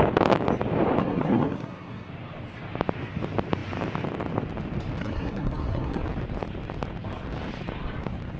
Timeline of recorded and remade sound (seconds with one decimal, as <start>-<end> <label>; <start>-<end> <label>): 0.0-1.0 recorded; 1.0-2.1 remade; 2.1-5.0 recorded; 5.0-6.0 remade; 6.0-8.4 recorded